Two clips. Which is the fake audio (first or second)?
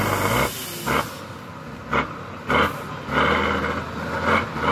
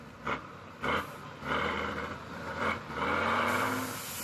second